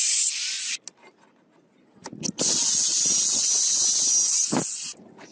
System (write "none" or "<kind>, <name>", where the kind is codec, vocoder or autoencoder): none